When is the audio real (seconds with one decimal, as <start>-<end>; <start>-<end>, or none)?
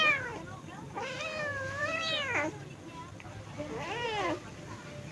0.0-5.1